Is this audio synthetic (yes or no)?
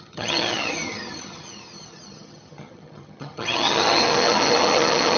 yes